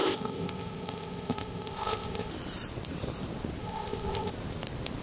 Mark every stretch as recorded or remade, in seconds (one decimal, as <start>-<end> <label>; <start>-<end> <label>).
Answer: 0.0-2.3 remade; 2.3-3.6 recorded; 3.6-4.3 remade; 4.3-5.0 recorded